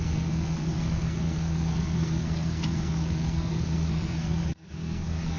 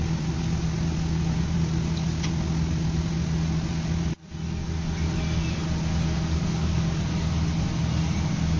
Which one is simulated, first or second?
first